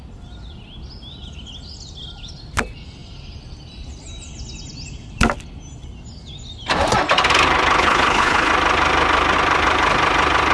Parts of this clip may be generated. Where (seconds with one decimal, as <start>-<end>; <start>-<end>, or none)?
7.8-8.5